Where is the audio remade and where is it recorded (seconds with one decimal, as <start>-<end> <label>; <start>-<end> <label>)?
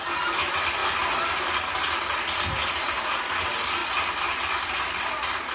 0.0-5.5 recorded